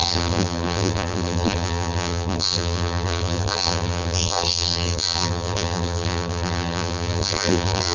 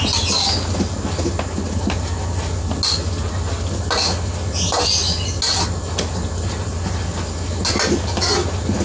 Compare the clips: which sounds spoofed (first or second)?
first